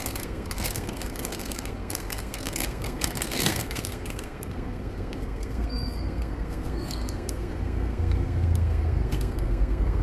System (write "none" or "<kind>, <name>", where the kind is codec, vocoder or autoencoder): codec, SNAC